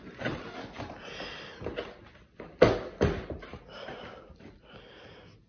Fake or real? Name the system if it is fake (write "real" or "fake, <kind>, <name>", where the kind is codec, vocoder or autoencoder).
real